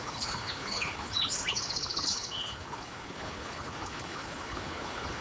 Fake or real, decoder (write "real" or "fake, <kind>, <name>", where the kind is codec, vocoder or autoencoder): fake, codec, HILCodec